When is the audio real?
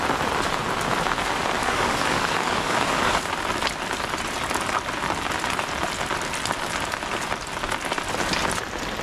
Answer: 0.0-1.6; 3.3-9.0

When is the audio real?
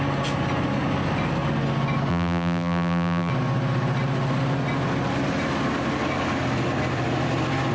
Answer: 0.0-2.1; 3.3-7.7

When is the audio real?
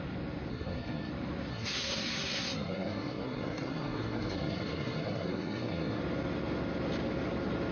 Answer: 0.0-0.5; 1.1-1.5; 6.0-7.7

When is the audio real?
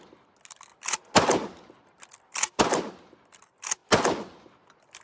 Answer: 0.0-5.0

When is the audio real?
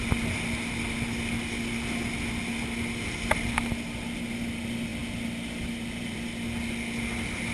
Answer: 0.0-7.5